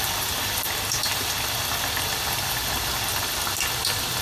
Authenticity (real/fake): fake